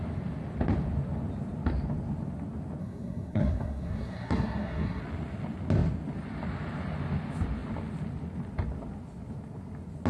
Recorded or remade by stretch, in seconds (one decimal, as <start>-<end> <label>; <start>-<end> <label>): 0.0-2.8 recorded; 2.8-5.0 remade; 5.0-10.1 recorded